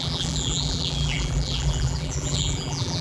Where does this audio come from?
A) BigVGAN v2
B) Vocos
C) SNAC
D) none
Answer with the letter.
A